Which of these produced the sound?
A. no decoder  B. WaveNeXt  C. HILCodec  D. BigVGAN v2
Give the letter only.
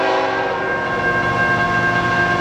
A